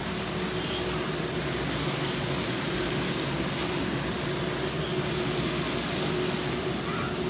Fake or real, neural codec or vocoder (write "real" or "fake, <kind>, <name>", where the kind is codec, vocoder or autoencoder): real